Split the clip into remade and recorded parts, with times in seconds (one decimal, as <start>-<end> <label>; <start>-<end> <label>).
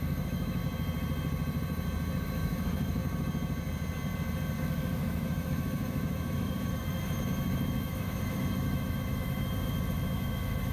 0.0-0.6 remade; 0.6-2.2 recorded; 2.2-3.0 remade; 3.0-4.6 recorded; 4.6-10.7 remade